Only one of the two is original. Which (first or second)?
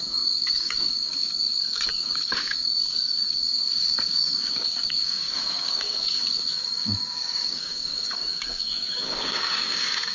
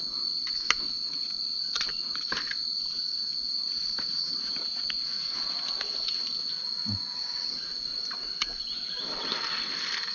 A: second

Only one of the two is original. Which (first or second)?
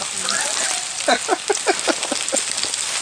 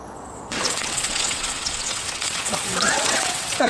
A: first